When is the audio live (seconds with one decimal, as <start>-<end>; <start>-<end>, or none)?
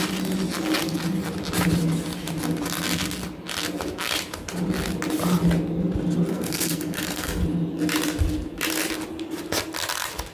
0.0-6.3; 7.4-10.3